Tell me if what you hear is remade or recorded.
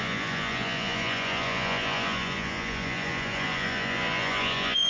remade